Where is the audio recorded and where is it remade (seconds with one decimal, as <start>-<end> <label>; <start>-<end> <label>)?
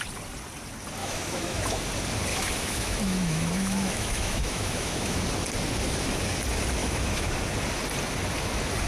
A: 0.0-1.0 recorded; 1.0-1.8 remade; 1.8-2.3 recorded; 2.3-5.2 remade; 5.2-6.8 recorded; 6.8-7.3 remade; 7.3-8.9 recorded